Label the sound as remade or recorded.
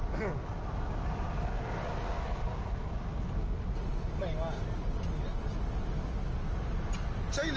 recorded